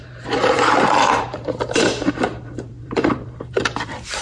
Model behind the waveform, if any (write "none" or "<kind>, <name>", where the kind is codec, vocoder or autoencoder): vocoder, BigVGAN v2